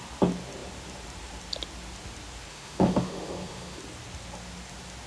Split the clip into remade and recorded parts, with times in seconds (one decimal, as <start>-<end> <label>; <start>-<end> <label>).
0.0-2.5 recorded; 2.5-3.8 remade; 3.8-5.1 recorded